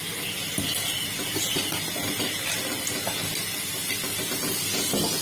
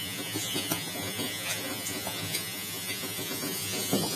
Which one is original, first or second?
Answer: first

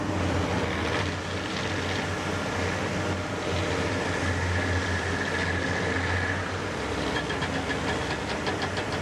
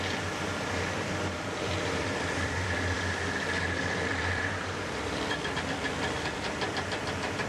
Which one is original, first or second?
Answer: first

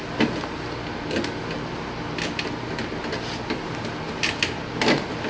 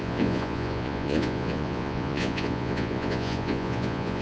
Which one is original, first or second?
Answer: first